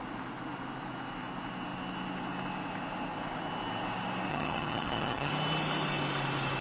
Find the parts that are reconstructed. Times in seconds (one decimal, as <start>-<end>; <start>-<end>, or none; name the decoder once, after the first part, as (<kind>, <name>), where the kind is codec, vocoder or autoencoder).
4.3-5.3 (vocoder, HiFi-GAN)

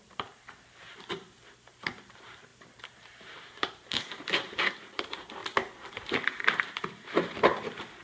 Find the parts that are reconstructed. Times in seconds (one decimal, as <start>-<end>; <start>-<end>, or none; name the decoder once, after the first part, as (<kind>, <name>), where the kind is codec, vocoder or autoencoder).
0.0-5.4 (vocoder, BigVGAN v2); 5.9-8.0

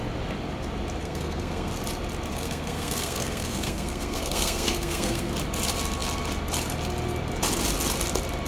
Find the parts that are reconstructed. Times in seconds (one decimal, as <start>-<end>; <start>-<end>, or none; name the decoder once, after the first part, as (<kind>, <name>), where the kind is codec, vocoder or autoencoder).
1.0-1.7 (codec, SNAC); 2.3-5.3